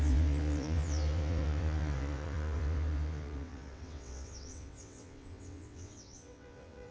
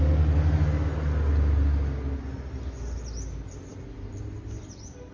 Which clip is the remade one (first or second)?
first